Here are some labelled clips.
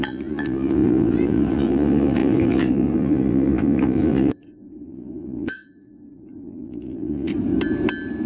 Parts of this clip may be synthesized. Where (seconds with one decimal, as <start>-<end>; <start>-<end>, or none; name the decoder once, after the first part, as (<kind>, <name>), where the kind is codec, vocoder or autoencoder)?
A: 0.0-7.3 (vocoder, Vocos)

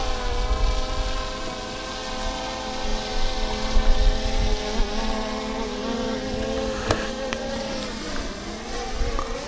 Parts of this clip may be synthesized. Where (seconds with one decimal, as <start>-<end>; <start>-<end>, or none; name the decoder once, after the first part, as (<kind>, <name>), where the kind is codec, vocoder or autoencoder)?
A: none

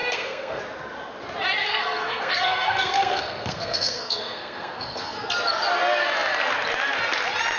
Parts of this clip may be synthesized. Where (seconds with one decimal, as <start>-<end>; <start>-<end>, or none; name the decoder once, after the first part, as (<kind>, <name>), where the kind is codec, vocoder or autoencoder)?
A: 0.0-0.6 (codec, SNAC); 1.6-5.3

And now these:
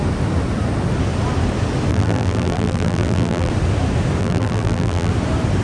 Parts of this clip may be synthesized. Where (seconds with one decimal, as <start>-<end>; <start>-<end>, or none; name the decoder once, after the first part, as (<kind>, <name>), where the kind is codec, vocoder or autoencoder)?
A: 1.9-3.5 (vocoder, BigVGAN v2); 4.2-5.1

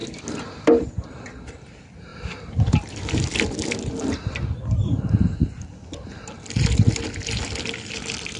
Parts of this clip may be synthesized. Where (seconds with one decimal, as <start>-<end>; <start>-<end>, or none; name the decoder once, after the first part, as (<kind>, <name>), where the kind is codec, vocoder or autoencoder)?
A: 0.0-1.1 (vocoder, BigVGAN v2); 2.1-6.5